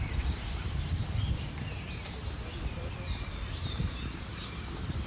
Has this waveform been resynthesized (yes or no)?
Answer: yes